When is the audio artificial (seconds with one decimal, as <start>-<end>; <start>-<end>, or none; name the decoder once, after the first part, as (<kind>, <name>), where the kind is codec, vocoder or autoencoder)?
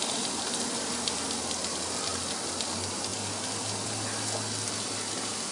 none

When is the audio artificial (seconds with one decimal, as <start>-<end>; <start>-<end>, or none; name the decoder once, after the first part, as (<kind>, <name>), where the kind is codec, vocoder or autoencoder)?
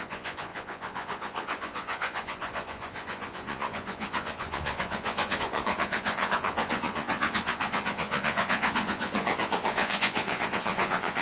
0.0-11.2 (vocoder, Vocos)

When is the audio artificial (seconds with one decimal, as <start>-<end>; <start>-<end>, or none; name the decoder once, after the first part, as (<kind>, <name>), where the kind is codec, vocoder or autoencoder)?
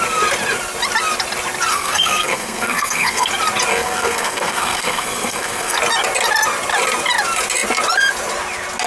1.7-3.3 (codec, SNAC); 3.7-5.8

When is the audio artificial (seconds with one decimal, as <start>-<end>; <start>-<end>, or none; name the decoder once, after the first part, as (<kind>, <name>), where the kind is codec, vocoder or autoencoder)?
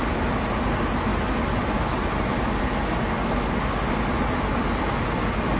none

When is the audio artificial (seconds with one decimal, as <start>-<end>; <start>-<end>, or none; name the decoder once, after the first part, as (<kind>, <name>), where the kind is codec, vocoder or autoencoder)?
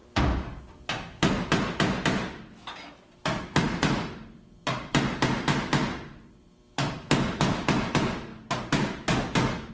0.6-8.3 (vocoder, BigVGAN v2)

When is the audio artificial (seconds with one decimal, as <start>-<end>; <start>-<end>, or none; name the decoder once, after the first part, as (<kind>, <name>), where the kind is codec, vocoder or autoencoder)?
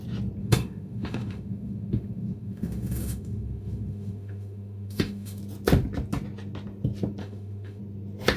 0.4-5.4 (autoencoder, DAC-VAE); 7.2-7.8